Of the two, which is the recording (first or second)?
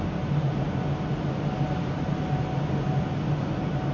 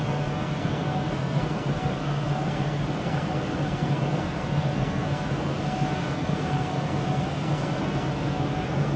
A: first